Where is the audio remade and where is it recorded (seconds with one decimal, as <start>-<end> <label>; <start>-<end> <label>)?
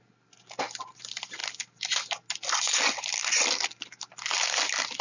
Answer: 0.0-5.0 recorded